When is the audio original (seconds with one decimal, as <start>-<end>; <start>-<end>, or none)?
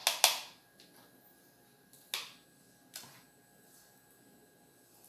0.0-5.1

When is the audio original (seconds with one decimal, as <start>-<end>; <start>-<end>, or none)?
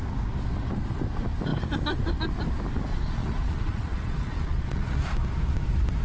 0.0-2.9; 5.0-6.0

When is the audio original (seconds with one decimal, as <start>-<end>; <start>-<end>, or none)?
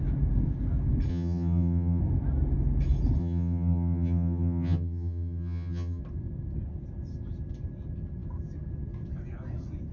0.0-1.1; 2.0-3.2; 6.0-9.9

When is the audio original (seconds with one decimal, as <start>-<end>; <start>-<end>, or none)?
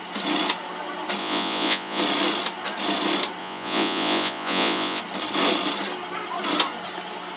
0.0-1.2; 2.0-3.4; 5.0-7.4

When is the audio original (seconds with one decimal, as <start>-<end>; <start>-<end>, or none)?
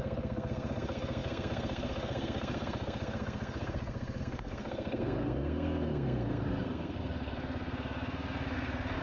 none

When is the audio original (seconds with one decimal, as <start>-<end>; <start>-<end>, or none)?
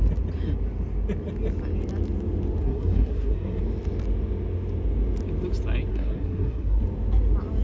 0.0-2.6; 3.6-5.9; 6.8-7.6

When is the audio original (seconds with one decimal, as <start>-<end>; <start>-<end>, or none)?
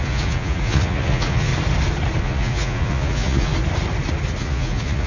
1.5-2.2; 3.5-4.4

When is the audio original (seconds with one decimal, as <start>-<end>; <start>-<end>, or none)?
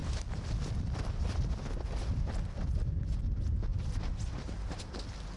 3.2-3.7; 4.8-5.4